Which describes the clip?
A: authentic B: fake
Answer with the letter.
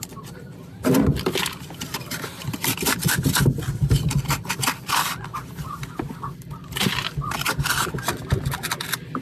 B